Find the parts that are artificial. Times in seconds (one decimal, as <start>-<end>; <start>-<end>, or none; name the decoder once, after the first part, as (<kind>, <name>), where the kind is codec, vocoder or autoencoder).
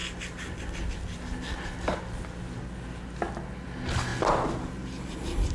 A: none